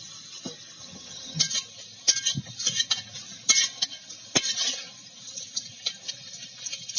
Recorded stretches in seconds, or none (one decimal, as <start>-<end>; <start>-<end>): 0.0-0.8; 1.4-7.0